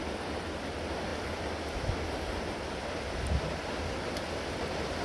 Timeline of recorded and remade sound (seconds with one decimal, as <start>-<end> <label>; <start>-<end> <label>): 0.0-5.0 recorded